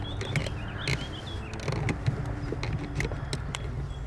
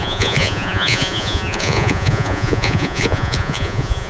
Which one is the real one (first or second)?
first